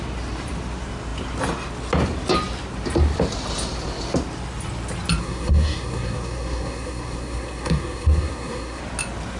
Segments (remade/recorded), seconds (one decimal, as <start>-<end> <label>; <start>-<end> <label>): 0.0-5.2 recorded; 5.2-8.8 remade; 8.8-9.4 recorded